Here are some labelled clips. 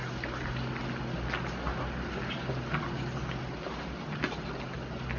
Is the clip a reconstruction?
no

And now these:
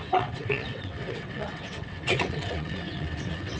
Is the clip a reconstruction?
yes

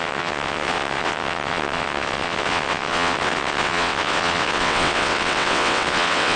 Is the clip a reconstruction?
yes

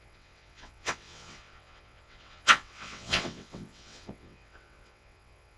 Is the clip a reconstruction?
yes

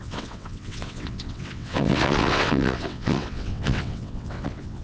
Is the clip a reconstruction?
yes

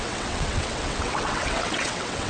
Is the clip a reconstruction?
yes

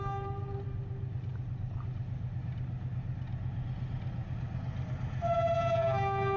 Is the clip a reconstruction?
no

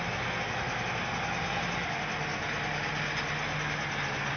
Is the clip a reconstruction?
no